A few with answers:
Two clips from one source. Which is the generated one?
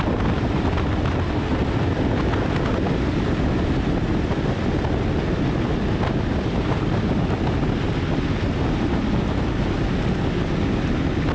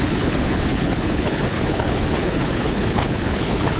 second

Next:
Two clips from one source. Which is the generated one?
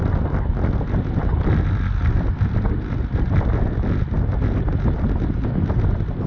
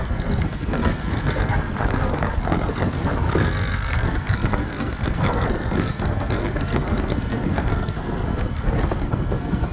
second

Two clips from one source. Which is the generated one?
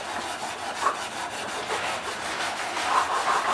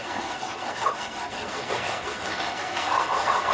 second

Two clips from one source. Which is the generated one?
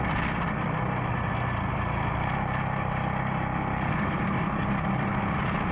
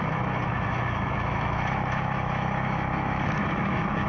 second